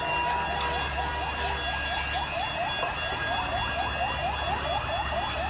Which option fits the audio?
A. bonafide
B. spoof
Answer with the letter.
A